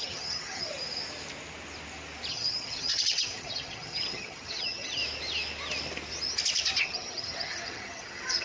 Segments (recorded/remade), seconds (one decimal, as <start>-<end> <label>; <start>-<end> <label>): 0.0-0.7 remade; 0.7-2.3 recorded; 2.3-5.0 remade; 5.0-6.8 recorded; 6.8-8.4 remade